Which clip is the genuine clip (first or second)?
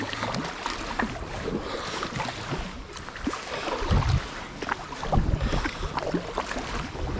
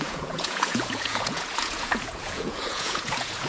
first